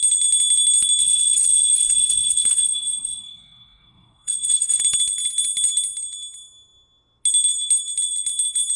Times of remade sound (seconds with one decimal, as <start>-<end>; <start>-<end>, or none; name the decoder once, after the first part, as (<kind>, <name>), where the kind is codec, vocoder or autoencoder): 1.0-4.8 (codec, SNAC)